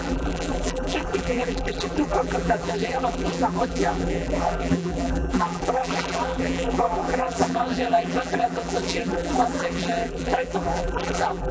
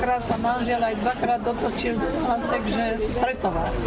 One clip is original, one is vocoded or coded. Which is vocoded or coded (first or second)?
first